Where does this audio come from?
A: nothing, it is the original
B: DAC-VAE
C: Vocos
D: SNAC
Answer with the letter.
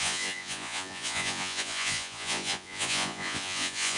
C